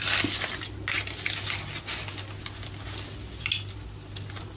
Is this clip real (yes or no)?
yes